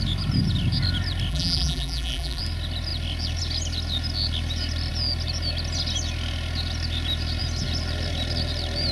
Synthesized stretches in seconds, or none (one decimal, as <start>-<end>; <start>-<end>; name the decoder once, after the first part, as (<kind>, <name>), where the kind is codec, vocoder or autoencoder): 1.3-2.4 (vocoder, BigVGAN v2)